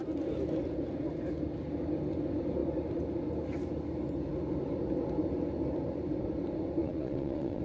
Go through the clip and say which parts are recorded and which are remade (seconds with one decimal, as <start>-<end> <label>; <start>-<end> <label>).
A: 0.0-6.8 recorded; 6.8-7.6 remade